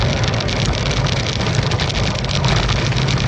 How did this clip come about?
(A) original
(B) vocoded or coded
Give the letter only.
A